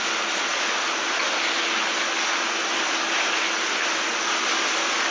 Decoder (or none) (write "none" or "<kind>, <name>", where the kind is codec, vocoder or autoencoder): none